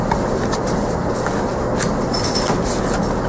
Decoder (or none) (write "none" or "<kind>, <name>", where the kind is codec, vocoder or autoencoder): none